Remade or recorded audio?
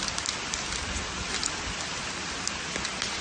recorded